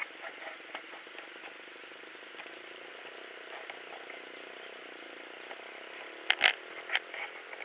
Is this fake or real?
real